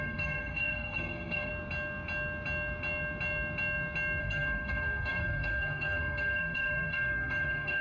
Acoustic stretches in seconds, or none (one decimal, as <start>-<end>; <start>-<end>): 1.5-4.2